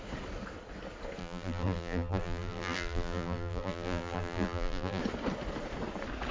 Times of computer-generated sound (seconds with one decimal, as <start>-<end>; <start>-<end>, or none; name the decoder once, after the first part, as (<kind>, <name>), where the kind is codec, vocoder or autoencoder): 1.2-5.0 (vocoder, BigVGAN v2)